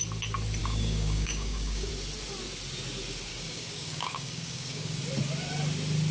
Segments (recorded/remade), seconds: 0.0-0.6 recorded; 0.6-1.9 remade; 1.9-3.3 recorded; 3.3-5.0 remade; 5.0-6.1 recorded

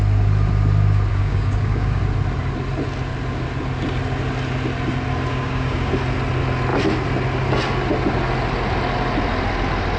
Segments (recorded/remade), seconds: 0.0-1.1 recorded; 1.1-2.0 remade; 2.0-5.3 recorded; 5.3-5.9 remade; 5.9-10.0 recorded

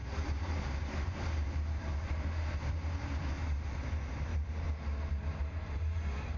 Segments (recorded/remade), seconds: 0.0-2.8 remade; 2.8-3.4 recorded; 3.4-4.3 remade; 4.3-5.1 recorded; 5.1-6.4 remade

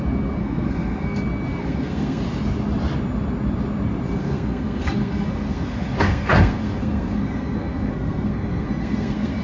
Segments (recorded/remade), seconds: 0.0-0.4 recorded; 0.4-1.2 remade; 1.2-1.6 recorded; 1.6-2.2 remade; 2.2-4.2 recorded; 4.2-9.4 remade

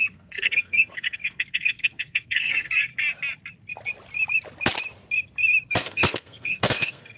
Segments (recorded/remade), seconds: 0.0-2.9 remade; 2.9-5.7 recorded; 5.7-7.2 remade